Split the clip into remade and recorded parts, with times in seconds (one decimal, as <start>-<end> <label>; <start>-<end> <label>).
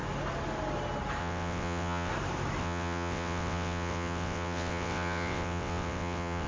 0.0-1.2 recorded; 1.2-2.1 remade; 2.1-2.6 recorded; 2.6-6.5 remade